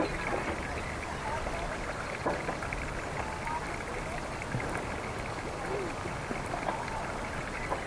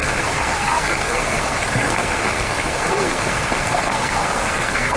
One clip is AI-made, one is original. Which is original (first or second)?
first